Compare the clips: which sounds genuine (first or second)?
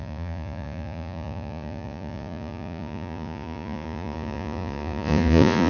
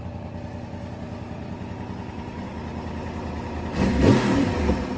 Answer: second